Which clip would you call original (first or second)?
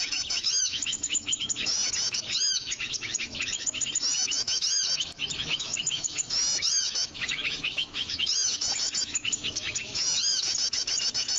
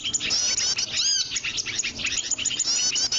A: second